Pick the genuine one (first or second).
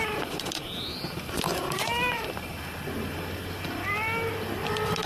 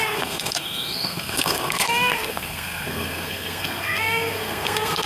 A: first